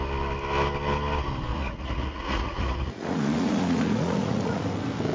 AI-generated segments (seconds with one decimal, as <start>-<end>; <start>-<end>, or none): 1.5-4.6